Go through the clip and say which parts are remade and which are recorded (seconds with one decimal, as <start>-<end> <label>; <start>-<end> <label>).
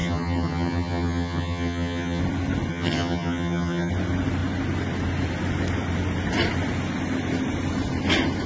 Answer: 0.0-2.2 remade; 2.2-2.7 recorded; 2.7-3.9 remade; 3.9-8.5 recorded